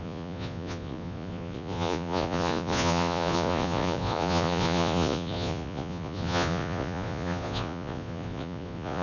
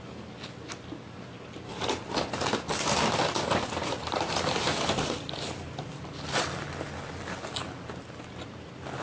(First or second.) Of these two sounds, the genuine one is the second